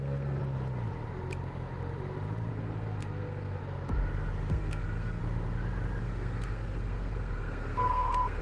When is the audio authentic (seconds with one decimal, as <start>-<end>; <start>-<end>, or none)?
0.4-2.5; 3.6-4.5; 5.2-6.0